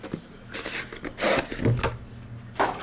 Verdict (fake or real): real